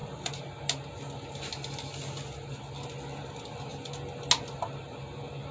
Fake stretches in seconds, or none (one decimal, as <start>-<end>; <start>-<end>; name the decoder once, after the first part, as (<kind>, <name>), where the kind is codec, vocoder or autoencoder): none